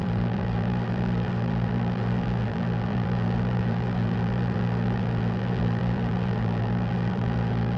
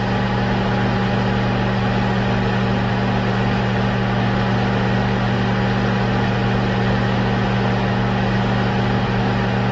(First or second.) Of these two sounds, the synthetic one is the first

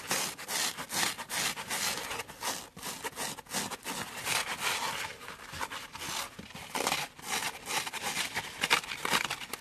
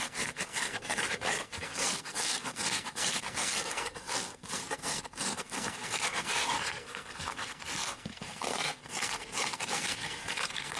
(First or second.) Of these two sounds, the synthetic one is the second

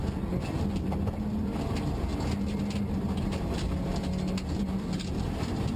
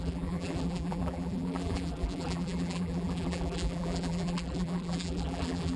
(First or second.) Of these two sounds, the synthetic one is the second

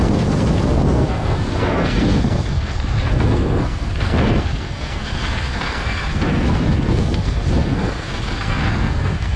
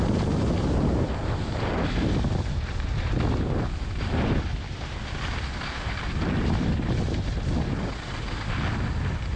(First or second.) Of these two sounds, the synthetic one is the first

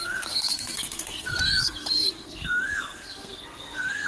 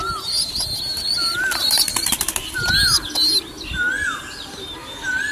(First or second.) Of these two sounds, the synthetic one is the first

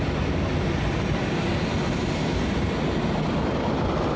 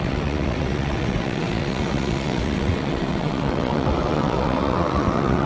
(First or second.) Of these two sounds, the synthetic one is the second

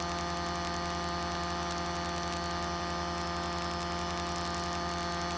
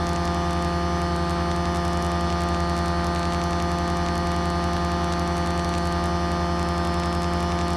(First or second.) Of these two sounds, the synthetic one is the first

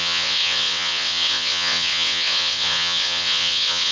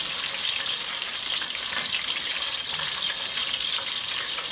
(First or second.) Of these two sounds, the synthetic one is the first